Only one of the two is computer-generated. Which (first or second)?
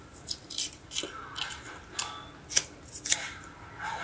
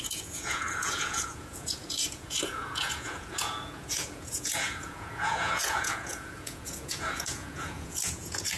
second